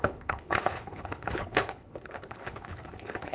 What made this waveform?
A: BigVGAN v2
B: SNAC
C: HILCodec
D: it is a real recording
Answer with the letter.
C